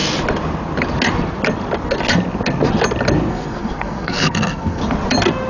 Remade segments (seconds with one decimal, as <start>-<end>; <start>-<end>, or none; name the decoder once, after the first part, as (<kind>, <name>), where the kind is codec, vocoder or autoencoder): 3.3-4.8 (codec, SNAC)